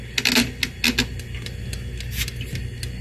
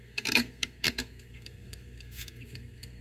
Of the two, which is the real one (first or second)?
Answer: first